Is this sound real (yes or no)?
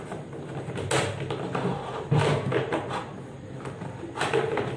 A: yes